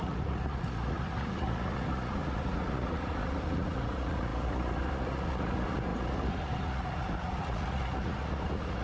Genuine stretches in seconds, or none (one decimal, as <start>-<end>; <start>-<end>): none